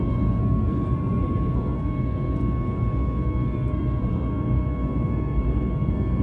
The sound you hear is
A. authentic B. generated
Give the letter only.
B